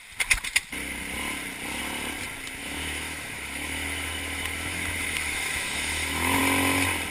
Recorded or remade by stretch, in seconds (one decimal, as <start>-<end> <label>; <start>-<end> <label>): 0.0-2.6 recorded; 2.6-6.4 remade; 6.4-7.1 recorded